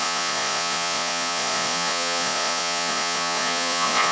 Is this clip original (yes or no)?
no